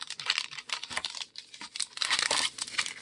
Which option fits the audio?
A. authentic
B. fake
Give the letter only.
B